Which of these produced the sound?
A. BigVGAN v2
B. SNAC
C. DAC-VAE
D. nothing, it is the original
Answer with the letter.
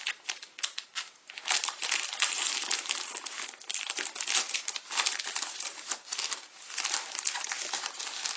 D